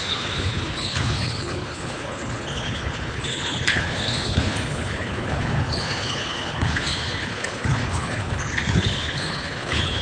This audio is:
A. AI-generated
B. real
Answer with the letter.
A